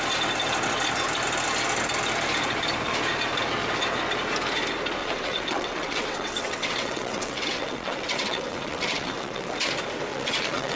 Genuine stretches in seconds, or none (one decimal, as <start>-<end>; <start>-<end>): 0.0-5.0; 9.7-10.1